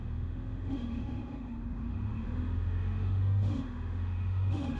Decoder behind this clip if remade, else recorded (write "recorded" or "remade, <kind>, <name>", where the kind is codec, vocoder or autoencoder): remade, autoencoder, DAC-VAE